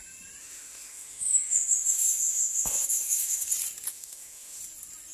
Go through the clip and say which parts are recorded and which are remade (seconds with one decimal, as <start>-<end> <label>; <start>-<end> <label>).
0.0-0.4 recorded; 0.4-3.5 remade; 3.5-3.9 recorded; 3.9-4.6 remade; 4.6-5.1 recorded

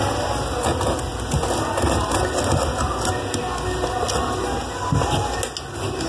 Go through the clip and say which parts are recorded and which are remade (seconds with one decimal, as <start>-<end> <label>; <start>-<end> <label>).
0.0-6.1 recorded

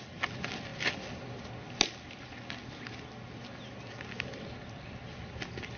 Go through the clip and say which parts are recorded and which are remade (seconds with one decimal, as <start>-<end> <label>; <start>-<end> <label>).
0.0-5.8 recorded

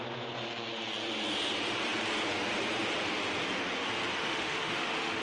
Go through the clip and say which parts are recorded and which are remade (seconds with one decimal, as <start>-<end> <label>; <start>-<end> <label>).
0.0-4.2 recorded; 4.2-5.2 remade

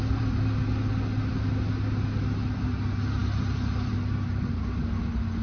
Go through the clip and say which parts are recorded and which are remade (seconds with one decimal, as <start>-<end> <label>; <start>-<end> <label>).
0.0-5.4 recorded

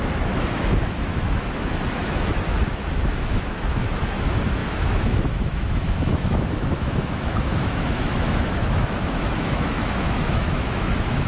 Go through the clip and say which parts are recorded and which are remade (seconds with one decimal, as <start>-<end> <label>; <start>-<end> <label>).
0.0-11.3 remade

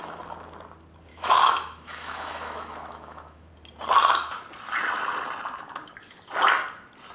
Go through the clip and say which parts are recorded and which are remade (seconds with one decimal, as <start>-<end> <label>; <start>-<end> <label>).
0.0-1.1 recorded; 1.1-3.5 remade; 3.5-7.1 recorded

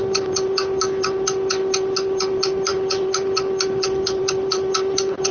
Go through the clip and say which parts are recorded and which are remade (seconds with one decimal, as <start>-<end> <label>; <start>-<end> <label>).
0.0-5.3 recorded